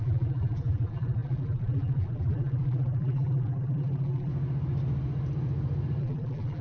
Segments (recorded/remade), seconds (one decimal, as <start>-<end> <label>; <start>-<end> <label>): 0.0-4.3 remade; 4.3-6.0 recorded; 6.0-6.6 remade